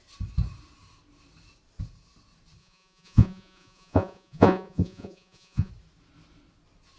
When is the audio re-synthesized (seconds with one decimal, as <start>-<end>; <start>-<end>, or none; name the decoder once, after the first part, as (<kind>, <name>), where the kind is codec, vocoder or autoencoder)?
2.6-5.7 (vocoder, Vocos)